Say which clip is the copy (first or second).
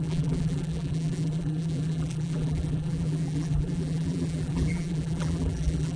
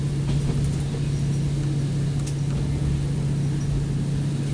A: first